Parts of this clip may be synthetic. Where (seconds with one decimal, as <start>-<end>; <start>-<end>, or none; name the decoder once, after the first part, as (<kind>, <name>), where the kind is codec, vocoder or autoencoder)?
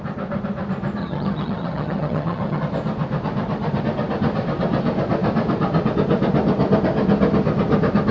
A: 1.0-2.6 (vocoder, HiFi-GAN)